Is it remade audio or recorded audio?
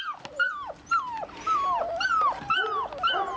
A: recorded